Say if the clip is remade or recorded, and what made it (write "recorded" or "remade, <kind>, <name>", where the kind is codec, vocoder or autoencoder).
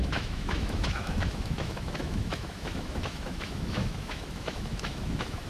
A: remade, autoencoder, DAC-VAE